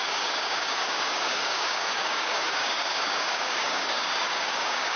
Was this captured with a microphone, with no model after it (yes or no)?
no